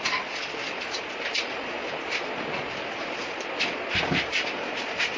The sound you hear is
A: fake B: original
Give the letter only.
B